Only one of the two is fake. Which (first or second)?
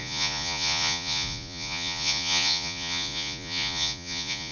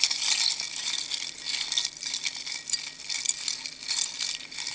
first